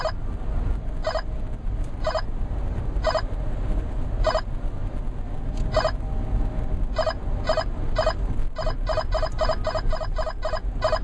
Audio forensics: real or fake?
real